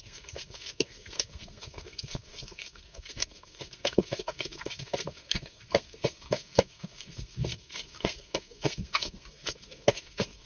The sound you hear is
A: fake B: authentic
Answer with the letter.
A